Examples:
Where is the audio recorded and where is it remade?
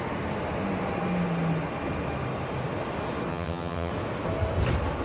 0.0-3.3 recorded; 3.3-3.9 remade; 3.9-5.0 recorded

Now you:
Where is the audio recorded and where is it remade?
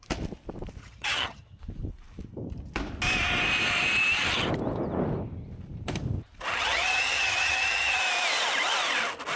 0.0-0.8 recorded; 0.8-1.6 remade; 1.6-6.5 recorded; 6.5-8.0 remade; 8.0-9.4 recorded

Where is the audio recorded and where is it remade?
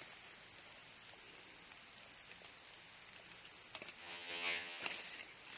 0.0-4.0 recorded; 4.0-4.8 remade; 4.8-5.6 recorded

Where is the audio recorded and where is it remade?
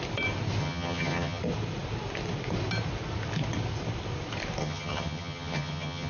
0.0-0.6 recorded; 0.6-1.4 remade; 1.4-4.6 recorded; 4.6-6.1 remade